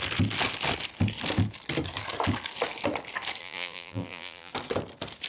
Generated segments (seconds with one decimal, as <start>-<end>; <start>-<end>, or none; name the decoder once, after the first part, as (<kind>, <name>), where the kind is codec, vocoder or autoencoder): 3.4-4.5 (vocoder, BigVGAN v2)